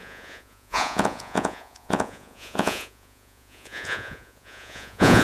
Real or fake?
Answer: fake